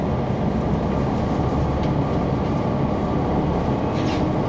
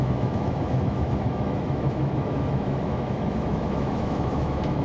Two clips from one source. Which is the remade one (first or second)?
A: second